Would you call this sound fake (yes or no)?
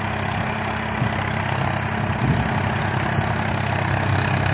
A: no